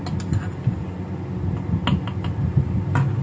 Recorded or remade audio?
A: recorded